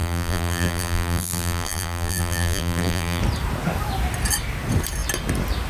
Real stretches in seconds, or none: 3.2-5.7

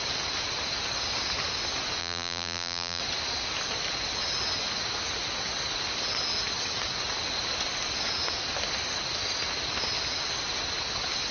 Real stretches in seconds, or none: 0.0-2.0; 3.0-11.3

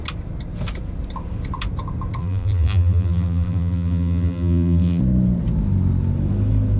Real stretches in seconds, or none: 0.0-2.2; 5.0-6.8

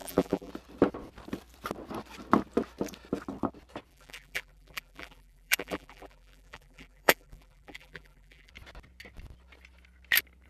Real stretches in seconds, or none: 0.5-3.9; 8.5-10.5